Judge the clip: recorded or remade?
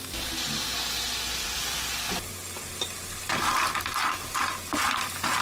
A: recorded